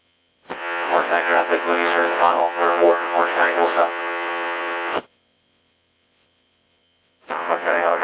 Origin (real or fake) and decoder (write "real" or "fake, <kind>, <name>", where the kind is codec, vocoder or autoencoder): fake, vocoder, WaveNeXt